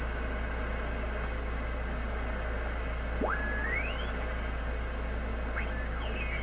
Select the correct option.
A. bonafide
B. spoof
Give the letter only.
A